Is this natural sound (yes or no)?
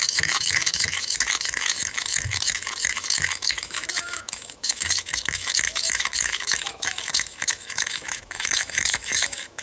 no